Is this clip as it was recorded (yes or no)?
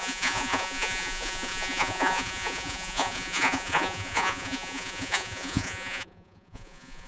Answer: no